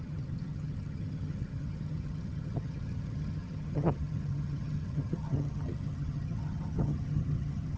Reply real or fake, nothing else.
fake